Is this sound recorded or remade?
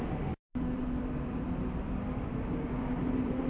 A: remade